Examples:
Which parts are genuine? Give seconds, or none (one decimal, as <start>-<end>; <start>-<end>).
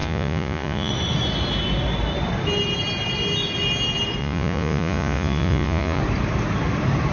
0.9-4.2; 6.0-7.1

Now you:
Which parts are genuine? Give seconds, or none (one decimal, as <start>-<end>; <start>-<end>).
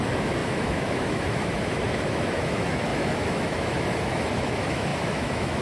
none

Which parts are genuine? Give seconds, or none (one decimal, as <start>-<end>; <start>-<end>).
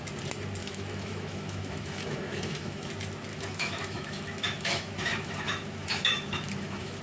0.0-0.6; 2.9-3.3